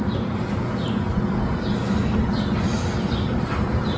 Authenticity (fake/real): real